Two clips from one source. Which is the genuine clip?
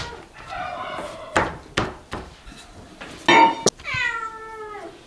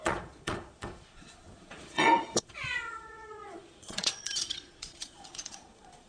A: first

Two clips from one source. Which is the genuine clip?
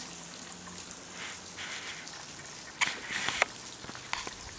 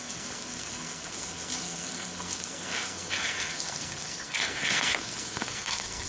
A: first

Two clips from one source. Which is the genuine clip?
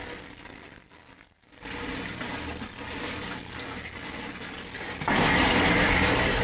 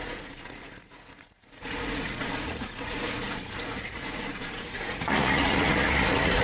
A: first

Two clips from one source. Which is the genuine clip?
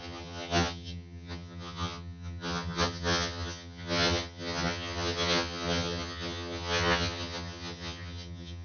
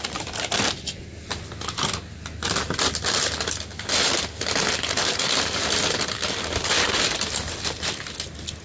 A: second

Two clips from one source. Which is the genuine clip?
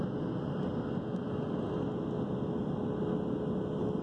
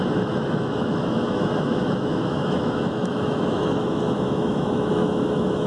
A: first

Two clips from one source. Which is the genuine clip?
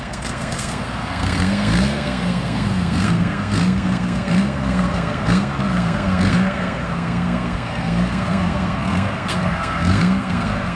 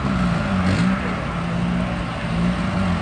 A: second